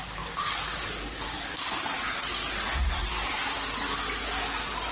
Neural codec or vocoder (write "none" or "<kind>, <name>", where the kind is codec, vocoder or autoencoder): none